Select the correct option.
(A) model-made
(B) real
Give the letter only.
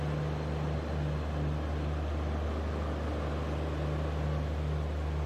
B